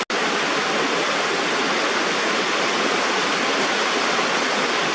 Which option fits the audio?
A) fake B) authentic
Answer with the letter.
B